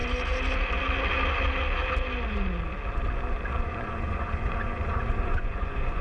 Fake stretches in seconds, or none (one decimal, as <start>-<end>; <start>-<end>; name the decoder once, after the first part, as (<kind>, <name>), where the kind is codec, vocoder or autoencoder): 3.6-6.0 (vocoder, Vocos)